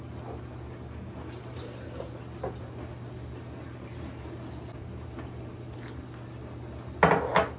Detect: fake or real real